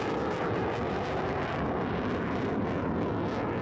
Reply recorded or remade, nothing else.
recorded